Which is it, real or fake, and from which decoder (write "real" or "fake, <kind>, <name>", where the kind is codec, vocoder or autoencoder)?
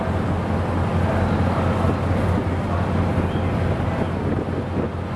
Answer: real